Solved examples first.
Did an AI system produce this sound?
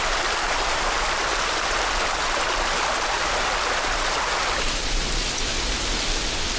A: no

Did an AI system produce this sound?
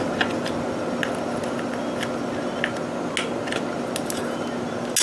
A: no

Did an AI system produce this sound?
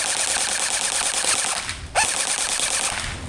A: no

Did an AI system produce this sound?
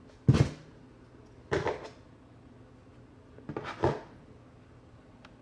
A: no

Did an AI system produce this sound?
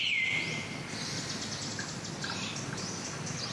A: no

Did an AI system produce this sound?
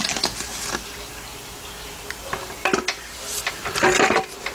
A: no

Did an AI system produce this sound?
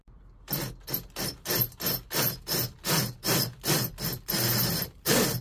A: no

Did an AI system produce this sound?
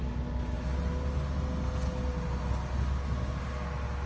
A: no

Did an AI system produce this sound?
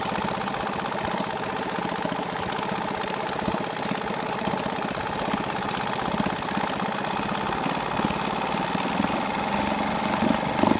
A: yes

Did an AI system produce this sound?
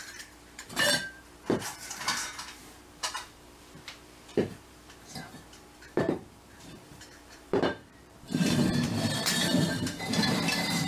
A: yes